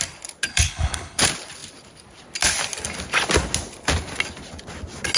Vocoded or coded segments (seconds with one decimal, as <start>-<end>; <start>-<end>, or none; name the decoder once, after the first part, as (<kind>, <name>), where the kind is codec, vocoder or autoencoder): 0.5-1.2 (codec, HILCodec)